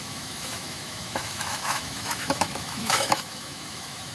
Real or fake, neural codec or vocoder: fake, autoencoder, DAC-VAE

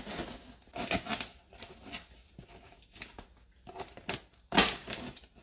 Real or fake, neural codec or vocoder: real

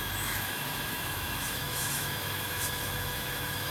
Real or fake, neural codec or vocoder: fake, autoencoder, DAC-VAE